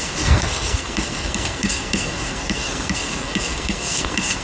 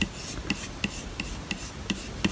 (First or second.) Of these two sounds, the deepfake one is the first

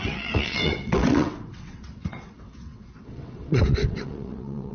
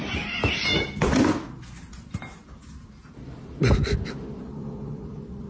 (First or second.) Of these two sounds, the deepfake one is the first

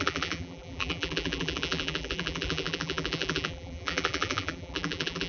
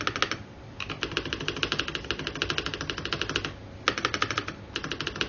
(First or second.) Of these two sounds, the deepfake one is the first